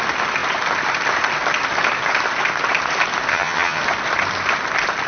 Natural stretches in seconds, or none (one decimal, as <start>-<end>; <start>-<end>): 0.0-3.3; 3.8-5.1